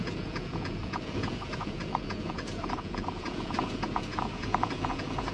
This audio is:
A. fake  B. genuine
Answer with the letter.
A